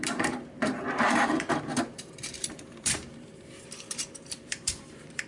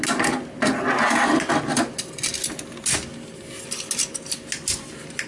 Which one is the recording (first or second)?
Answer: second